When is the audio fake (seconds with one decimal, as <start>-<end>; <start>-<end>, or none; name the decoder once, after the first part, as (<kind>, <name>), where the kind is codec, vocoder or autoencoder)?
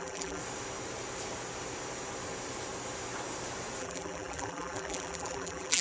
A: 0.0-0.4 (vocoder, BigVGAN v2); 3.8-5.8